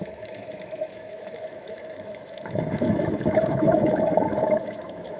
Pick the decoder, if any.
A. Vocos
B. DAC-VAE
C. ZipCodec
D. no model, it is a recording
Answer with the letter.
B